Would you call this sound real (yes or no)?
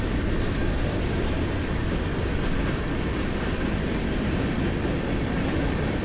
yes